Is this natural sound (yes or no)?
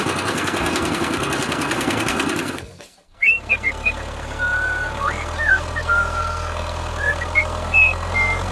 no